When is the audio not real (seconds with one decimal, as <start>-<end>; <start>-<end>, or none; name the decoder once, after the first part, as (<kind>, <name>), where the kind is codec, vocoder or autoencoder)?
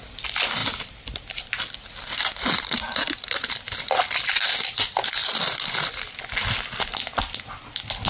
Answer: 0.6-3.4 (vocoder, BigVGAN v2); 5.2-6.0